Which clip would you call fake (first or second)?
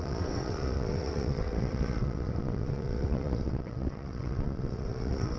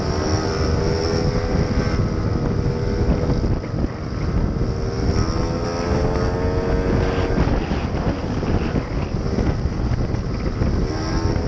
first